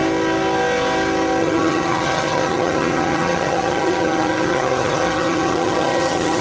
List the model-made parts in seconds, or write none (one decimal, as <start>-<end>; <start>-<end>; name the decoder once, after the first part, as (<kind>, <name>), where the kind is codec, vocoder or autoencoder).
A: 1.4-6.4 (vocoder, HiFi-GAN)